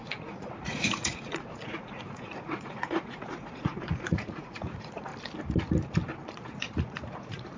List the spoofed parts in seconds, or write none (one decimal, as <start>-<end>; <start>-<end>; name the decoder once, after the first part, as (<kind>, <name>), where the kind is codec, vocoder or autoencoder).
0.0-5.1 (vocoder, Vocos); 6.3-7.6